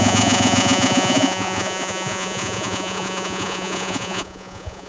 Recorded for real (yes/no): no